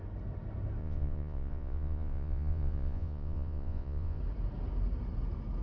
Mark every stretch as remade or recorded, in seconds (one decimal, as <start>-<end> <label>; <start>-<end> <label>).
0.0-0.8 recorded; 0.8-4.2 remade; 4.2-5.6 recorded